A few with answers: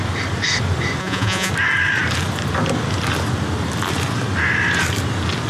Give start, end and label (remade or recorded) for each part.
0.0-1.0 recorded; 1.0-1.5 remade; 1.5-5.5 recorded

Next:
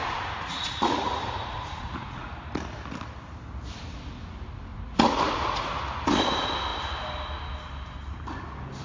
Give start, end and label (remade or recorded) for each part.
0.0-2.3 remade; 2.3-4.7 recorded; 4.7-5.8 remade; 5.8-8.8 recorded

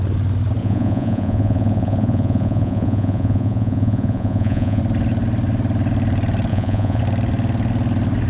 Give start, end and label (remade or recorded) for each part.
0.0-0.6 recorded; 0.6-4.8 remade; 4.8-6.5 recorded; 6.5-7.0 remade; 7.0-8.3 recorded

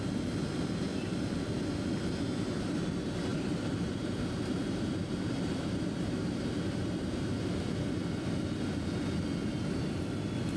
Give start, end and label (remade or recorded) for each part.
0.0-0.9 recorded; 0.9-1.6 remade; 1.6-3.3 recorded; 3.3-7.3 remade; 7.3-10.6 recorded